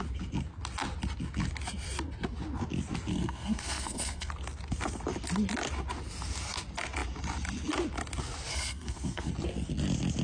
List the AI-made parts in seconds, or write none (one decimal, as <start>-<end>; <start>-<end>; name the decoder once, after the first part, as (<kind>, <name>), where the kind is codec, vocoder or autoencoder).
3.1-4.3 (codec, SNAC); 8.5-9.3